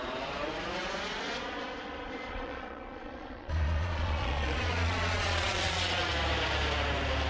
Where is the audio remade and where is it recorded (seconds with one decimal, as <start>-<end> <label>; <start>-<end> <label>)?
0.0-2.3 recorded; 2.3-6.1 remade; 6.1-7.3 recorded